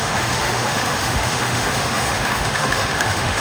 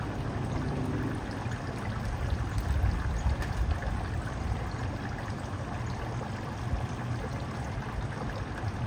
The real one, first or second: second